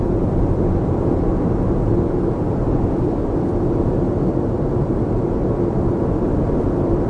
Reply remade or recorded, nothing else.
recorded